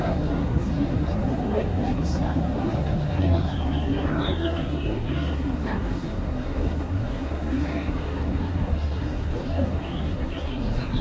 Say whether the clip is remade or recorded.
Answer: remade